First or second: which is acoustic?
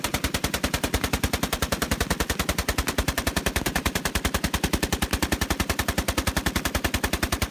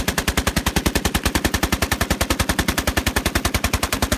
second